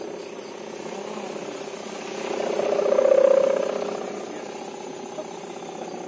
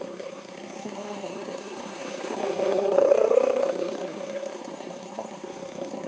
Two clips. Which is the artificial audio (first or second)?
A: second